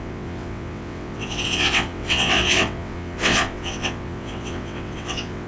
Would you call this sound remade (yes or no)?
yes